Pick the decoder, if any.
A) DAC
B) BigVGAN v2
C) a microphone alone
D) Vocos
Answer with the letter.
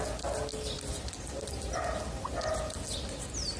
C